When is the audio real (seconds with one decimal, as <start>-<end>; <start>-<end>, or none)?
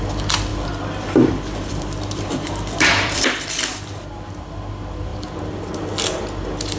0.0-0.5; 4.3-5.1; 5.6-6.8